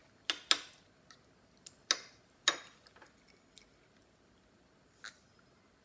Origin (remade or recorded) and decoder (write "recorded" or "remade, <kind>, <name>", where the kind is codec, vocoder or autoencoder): recorded